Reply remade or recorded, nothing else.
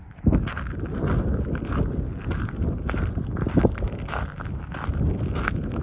recorded